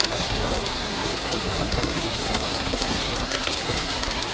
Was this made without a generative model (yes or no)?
no